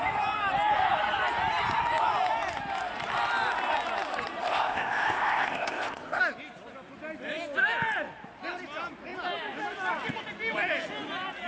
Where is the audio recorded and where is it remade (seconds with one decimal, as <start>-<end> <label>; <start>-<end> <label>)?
0.0-4.4 recorded; 4.4-6.2 remade; 6.2-11.5 recorded